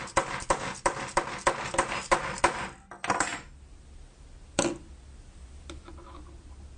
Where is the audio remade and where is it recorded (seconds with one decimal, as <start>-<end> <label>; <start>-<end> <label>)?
0.0-6.8 recorded